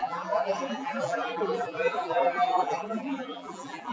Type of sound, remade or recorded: remade